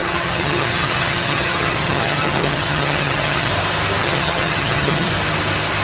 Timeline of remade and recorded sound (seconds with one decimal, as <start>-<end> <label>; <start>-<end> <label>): 0.0-3.5 remade; 3.5-4.0 recorded; 4.0-5.1 remade; 5.1-5.8 recorded